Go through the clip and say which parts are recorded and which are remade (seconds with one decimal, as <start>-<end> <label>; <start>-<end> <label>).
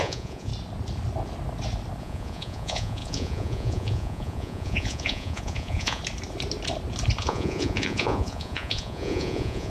0.0-0.5 remade; 0.5-2.0 recorded; 2.0-6.0 remade; 6.0-7.2 recorded; 7.2-9.7 remade